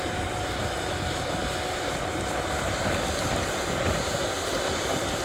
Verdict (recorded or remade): recorded